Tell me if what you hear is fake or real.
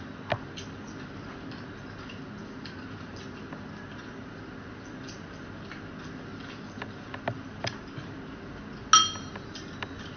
real